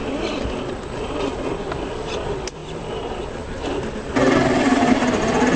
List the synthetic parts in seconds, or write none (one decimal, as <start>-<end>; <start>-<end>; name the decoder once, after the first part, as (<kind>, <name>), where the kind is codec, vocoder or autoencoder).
none